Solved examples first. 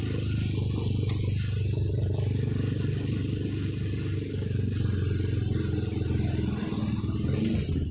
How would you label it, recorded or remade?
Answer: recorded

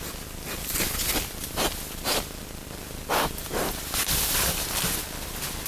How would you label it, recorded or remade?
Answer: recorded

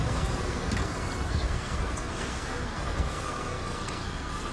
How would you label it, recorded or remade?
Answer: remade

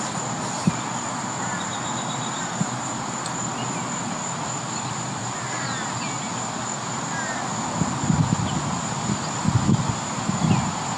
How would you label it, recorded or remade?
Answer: recorded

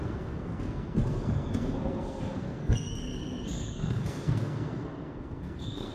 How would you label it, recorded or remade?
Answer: remade